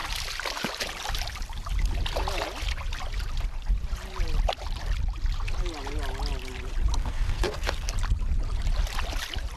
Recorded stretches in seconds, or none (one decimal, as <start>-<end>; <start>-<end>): 0.0-7.0; 7.9-9.6